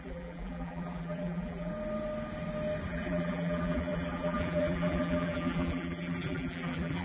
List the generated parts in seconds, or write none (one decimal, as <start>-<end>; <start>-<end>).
0.0-1.7; 2.9-7.0

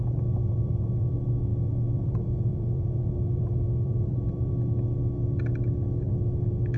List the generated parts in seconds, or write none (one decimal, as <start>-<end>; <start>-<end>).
0.4-1.1; 1.5-4.5

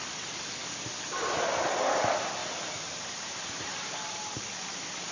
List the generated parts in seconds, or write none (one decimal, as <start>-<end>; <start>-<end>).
2.4-4.1

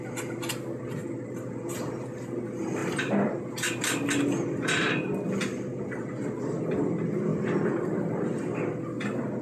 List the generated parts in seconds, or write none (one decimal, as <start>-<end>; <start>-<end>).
1.0-1.9; 2.8-3.4; 7.3-8.7

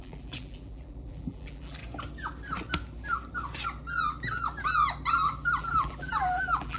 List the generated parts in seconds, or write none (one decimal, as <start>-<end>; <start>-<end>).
0.0-1.8; 5.6-6.8

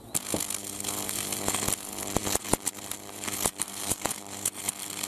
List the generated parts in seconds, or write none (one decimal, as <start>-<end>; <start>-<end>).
2.2-4.6

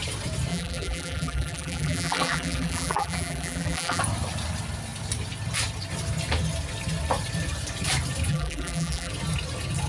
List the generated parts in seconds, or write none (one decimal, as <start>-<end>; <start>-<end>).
0.5-4.0; 8.3-9.1